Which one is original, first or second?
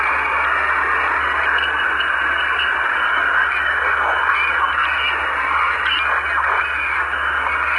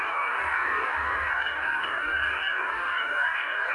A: first